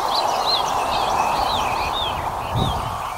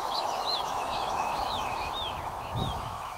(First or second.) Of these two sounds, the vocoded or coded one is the second